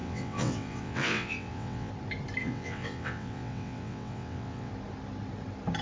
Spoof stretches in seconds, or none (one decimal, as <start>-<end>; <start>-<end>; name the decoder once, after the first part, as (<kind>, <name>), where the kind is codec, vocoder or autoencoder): 0.0-1.9 (vocoder, WaveNeXt); 2.4-4.7